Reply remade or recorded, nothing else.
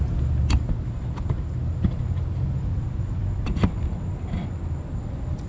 recorded